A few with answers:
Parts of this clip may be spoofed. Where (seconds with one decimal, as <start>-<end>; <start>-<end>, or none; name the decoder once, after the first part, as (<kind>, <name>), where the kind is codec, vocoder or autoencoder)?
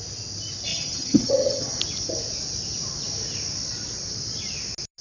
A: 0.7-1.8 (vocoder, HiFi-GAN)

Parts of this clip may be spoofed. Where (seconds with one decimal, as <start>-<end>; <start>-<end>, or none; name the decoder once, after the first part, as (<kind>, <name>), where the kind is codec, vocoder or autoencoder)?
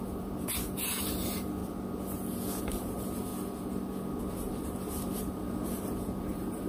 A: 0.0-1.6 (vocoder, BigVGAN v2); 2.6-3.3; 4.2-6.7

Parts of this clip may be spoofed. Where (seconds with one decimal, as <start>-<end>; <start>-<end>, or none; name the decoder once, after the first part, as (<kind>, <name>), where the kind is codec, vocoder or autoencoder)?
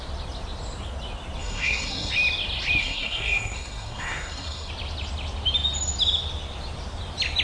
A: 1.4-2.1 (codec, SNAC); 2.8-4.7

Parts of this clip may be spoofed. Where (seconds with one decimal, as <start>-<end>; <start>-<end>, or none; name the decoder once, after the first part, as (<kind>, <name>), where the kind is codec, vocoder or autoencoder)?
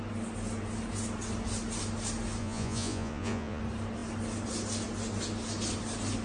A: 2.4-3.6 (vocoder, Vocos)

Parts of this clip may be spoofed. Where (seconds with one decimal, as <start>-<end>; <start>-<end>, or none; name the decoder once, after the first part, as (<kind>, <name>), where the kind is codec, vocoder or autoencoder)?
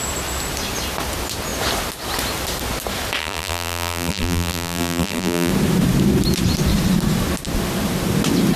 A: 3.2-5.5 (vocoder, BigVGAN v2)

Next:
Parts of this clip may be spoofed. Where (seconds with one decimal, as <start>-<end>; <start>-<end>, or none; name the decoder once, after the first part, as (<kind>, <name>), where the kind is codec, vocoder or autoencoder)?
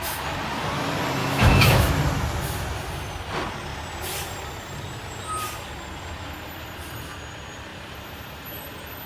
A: 1.2-1.9 (autoencoder, DAC-VAE)